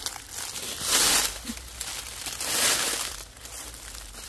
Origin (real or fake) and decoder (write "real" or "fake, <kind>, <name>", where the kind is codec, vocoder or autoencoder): real